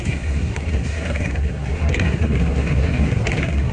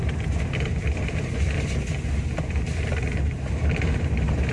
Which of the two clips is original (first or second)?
second